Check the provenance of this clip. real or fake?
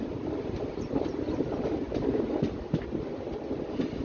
real